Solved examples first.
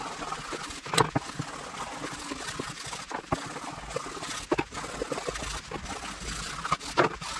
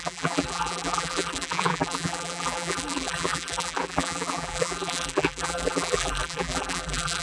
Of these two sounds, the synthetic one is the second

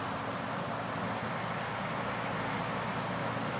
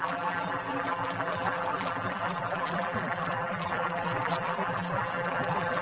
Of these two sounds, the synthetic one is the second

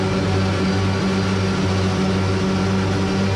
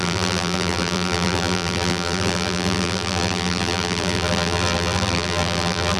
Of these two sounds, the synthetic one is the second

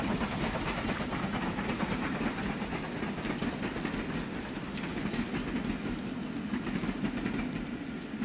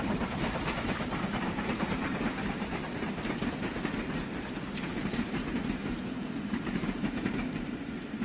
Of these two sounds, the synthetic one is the second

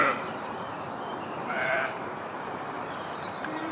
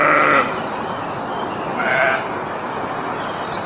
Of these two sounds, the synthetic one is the first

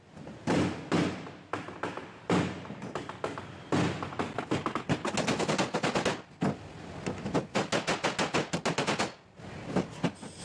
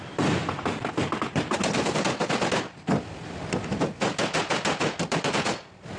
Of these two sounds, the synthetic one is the second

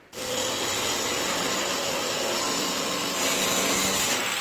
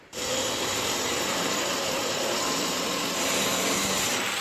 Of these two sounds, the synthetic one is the second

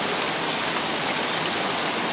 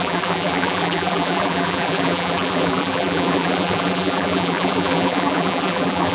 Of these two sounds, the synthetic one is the second